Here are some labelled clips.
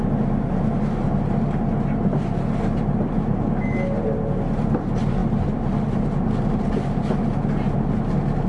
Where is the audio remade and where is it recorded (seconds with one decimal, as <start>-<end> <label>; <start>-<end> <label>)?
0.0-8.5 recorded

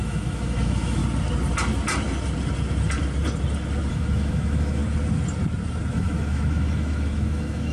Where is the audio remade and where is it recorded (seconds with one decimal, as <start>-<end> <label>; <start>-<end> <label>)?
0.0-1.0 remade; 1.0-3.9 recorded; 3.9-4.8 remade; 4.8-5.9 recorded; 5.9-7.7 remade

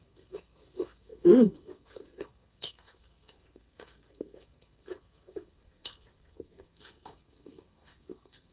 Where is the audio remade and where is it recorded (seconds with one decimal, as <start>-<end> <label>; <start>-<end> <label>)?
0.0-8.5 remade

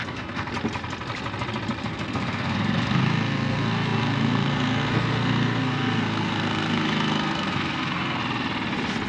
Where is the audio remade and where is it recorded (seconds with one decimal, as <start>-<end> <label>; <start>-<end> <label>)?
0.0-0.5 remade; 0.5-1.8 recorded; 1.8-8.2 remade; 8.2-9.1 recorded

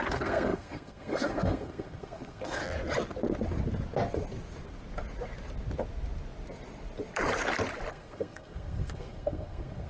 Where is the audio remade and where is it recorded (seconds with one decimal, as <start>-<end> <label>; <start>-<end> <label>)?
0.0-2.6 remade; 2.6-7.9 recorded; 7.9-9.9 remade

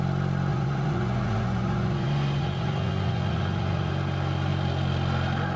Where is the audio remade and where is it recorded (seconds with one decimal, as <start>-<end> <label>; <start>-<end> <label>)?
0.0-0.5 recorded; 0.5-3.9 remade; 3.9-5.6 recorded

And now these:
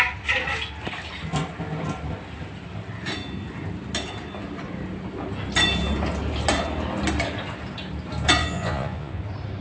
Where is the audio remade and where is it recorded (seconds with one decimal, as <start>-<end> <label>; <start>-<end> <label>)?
0.0-8.4 recorded; 8.4-9.2 remade; 9.2-9.6 recorded

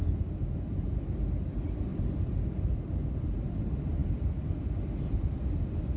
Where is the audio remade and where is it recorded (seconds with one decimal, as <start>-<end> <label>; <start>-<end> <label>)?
0.0-6.0 recorded